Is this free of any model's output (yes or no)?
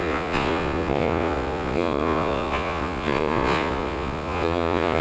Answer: no